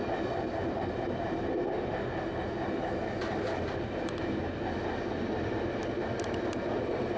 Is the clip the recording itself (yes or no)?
yes